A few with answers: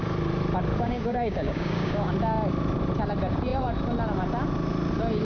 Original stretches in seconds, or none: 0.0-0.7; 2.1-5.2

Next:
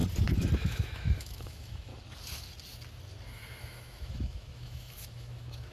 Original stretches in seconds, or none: 0.0-0.6; 1.9-3.6

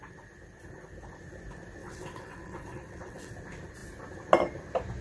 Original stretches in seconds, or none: 0.0-1.8; 3.3-5.0

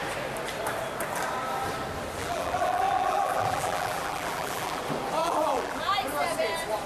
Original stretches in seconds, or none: 0.0-2.2; 4.8-5.2; 5.8-6.9

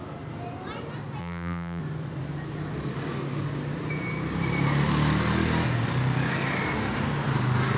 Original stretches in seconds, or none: 0.0-1.2; 1.8-7.8

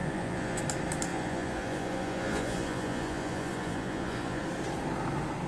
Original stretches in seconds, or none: 0.6-1.1; 4.4-5.5

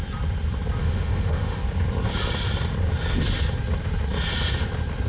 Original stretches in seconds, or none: 0.0-0.8; 1.6-5.1